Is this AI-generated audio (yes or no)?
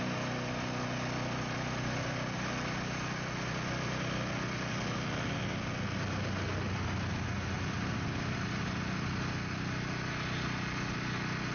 no